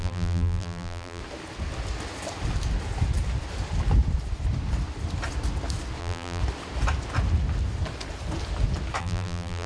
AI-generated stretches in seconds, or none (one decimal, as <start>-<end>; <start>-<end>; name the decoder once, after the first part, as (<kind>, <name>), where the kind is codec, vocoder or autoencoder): 0.0-1.2 (vocoder, BigVGAN v2); 6.0-6.4; 9.0-9.7

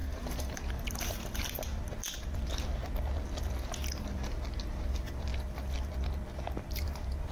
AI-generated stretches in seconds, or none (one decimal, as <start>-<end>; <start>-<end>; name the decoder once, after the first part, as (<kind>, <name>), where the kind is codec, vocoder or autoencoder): 0.0-1.7 (vocoder, BigVGAN v2); 4.6-5.3; 6.6-7.3

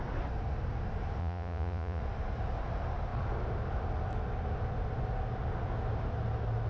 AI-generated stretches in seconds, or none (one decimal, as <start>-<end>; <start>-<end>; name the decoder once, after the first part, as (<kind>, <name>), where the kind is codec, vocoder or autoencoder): 1.2-2.0 (vocoder, Vocos)